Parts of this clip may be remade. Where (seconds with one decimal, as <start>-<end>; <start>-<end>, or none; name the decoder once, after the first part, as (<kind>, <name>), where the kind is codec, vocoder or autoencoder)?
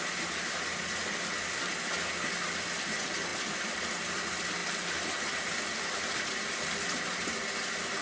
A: none